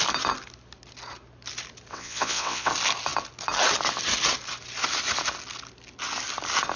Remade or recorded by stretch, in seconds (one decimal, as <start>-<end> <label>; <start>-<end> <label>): 0.0-1.9 recorded; 1.9-2.7 remade; 2.7-6.8 recorded